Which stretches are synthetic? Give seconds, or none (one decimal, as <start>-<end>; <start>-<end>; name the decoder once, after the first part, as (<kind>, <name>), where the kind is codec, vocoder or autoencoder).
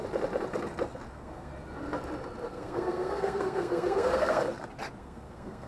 1.1-1.5 (codec, SNAC); 2.5-4.4; 5.0-5.7